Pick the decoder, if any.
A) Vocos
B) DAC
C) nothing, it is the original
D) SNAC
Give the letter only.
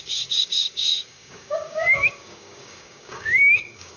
B